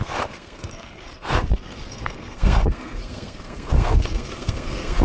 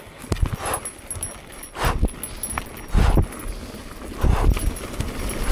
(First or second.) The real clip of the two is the second